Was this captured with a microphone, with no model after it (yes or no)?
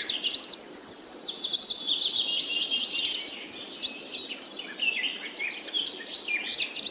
yes